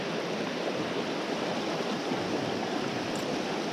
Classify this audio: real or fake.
real